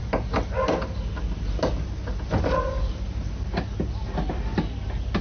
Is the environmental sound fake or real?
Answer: real